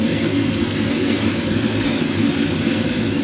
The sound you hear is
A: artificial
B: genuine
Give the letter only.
A